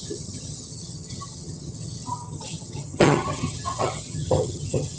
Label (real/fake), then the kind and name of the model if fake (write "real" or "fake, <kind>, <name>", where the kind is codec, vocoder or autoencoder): fake, vocoder, HiFi-GAN